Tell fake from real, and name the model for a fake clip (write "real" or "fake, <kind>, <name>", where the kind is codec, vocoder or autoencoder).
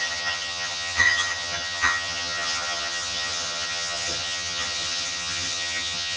fake, vocoder, HiFi-GAN